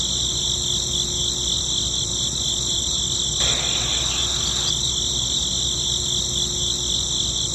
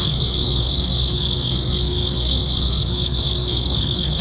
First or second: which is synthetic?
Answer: second